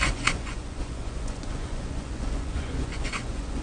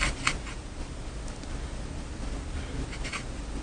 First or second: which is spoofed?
first